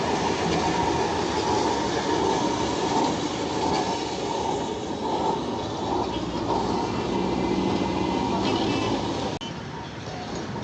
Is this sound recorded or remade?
recorded